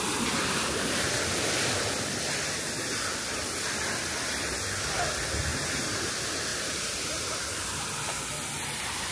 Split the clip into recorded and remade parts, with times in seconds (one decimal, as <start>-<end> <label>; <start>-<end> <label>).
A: 0.0-5.5 recorded; 5.5-6.1 remade; 6.1-6.5 recorded; 6.5-7.4 remade; 7.4-9.1 recorded